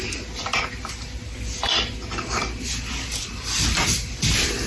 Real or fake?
real